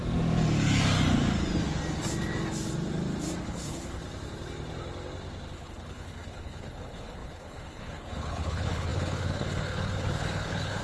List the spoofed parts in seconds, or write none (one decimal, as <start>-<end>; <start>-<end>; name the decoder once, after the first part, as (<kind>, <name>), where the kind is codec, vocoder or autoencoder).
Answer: 3.4-4.0 (codec, HILCodec); 5.5-10.8